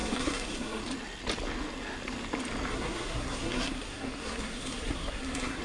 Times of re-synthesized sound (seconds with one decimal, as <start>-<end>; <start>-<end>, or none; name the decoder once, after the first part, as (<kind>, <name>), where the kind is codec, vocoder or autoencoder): 0.0-0.8 (codec, SNAC); 2.7-5.6